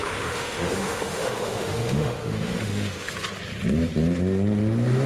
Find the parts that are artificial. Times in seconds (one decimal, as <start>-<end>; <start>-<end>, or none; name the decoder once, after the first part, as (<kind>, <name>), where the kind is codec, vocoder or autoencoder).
0.0-3.1 (autoencoder, DAC-VAE)